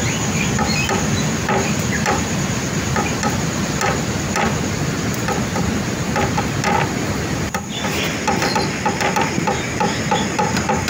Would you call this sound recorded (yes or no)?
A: yes